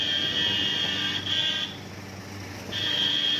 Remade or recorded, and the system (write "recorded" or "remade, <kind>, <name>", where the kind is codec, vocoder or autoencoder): recorded